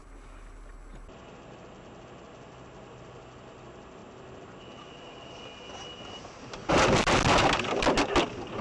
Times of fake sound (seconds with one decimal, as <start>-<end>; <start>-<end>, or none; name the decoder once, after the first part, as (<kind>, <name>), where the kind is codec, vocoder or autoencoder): none